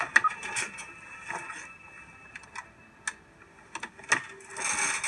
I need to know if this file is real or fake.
real